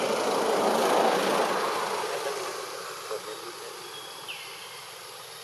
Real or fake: real